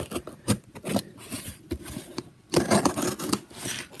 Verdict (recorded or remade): recorded